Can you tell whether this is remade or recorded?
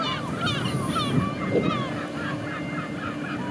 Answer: recorded